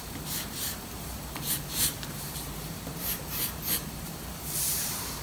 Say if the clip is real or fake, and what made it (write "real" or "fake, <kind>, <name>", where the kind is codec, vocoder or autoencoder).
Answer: fake, vocoder, BigVGAN v2